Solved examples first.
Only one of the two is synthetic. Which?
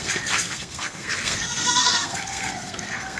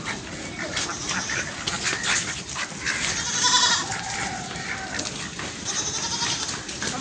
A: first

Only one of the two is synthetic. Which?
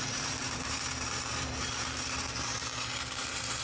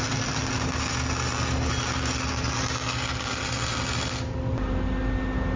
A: first